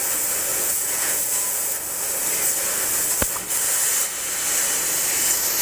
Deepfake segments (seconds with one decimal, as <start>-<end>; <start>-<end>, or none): 0.5-1.6